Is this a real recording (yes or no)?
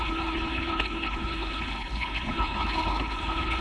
no